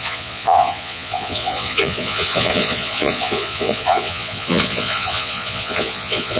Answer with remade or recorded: remade